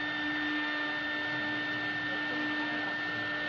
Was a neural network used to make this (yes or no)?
no